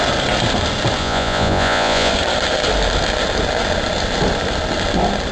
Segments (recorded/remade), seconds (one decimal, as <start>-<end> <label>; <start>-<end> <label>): 0.0-1.0 recorded; 1.0-2.1 remade; 2.1-5.3 recorded